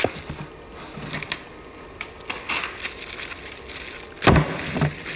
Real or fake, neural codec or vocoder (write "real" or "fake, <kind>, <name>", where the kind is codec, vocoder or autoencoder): real